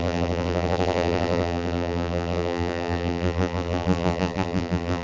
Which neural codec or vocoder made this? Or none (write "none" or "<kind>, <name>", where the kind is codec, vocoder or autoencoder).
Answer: vocoder, BigVGAN v2